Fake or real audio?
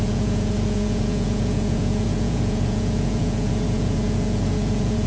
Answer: fake